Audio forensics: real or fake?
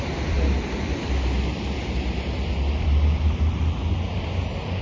fake